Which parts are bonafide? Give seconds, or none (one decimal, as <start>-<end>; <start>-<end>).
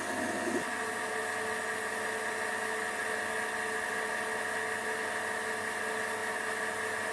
0.0-7.1